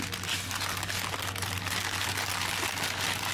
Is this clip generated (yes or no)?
no